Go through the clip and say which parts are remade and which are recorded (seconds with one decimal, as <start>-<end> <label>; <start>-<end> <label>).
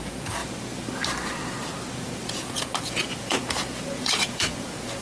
0.0-0.4 remade; 0.4-1.9 recorded; 1.9-5.0 remade